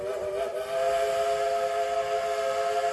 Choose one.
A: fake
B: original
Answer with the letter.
B